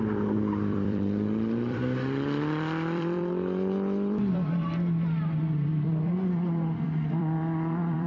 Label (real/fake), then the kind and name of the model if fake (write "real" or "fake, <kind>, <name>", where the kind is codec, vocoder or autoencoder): fake, vocoder, BigVGAN v2